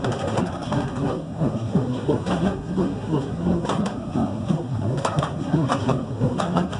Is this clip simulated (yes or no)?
yes